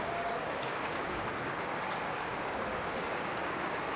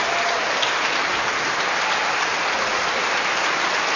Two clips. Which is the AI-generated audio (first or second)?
first